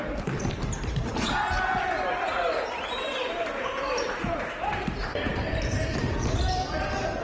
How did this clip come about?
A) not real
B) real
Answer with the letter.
A